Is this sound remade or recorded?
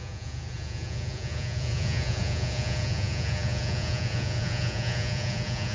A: remade